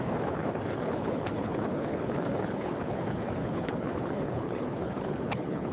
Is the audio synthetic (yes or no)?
yes